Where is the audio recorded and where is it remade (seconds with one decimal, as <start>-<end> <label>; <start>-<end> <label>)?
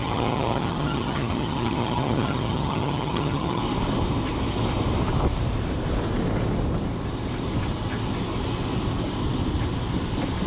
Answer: 0.0-3.6 remade; 3.6-10.5 recorded